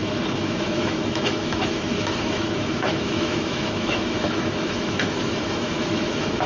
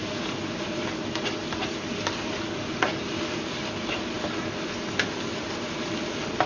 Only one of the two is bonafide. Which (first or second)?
second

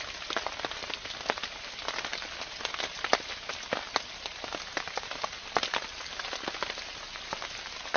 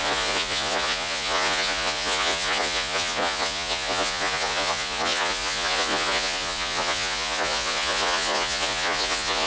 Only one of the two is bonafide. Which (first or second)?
first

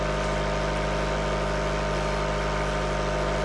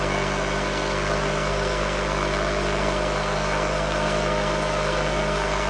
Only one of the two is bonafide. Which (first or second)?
first